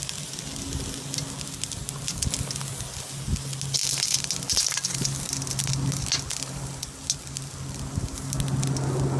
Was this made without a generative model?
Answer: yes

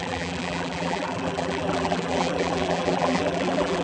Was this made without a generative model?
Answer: no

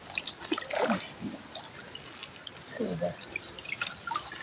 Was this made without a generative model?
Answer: yes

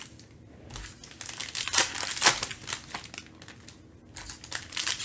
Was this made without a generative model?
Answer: yes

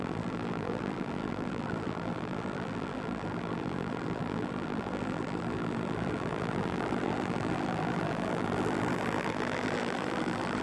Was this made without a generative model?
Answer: no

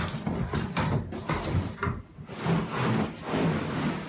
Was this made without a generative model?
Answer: yes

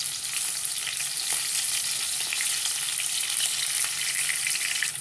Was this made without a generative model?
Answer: yes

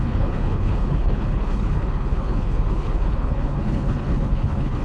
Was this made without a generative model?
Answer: no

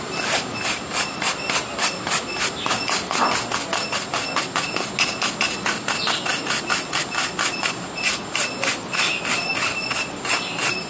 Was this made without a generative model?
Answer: yes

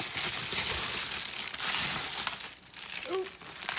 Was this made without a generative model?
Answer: yes